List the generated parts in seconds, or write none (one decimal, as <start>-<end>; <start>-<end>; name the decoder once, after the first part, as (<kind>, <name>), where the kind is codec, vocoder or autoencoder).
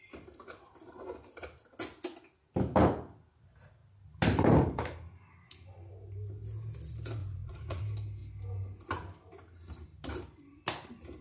7.2-7.8 (vocoder, Vocos)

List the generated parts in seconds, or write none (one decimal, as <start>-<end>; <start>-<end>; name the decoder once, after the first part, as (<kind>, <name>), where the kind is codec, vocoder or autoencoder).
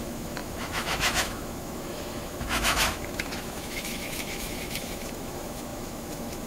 0.0-6.5 (autoencoder, DAC-VAE)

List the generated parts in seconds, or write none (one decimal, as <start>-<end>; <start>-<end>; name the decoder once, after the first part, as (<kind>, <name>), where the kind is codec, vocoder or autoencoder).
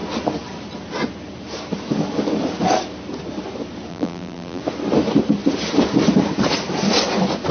3.9-4.6 (vocoder, BigVGAN v2)